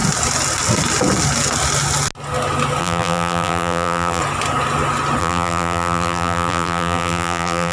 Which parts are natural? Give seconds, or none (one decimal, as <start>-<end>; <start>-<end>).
0.0-2.8; 4.2-5.2